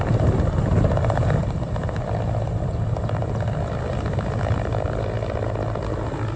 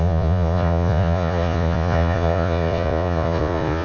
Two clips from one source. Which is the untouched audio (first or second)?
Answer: first